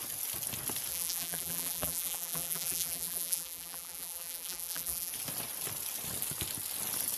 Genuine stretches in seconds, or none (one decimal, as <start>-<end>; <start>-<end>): 0.0-0.9; 5.1-7.2

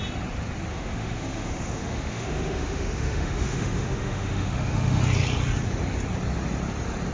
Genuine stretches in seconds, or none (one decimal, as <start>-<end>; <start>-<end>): 0.0-0.7; 5.0-7.1

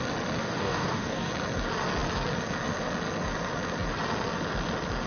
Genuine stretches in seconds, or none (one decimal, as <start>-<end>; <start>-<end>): 0.0-0.4; 1.3-5.1